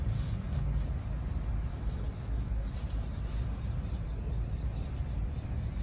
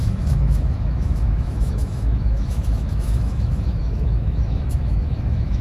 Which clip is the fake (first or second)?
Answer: second